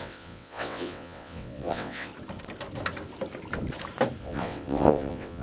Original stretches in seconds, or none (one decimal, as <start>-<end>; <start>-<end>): 2.1-4.2

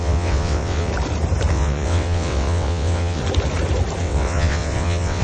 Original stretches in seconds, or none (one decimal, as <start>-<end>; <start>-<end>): 0.9-1.5; 3.2-4.0

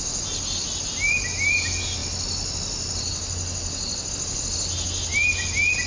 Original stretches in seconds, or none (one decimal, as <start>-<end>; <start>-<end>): 0.0-5.9